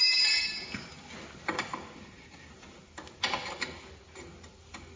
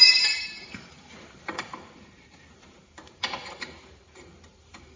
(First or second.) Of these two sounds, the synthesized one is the second